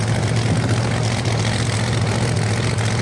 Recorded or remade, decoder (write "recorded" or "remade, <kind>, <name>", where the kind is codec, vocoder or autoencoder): recorded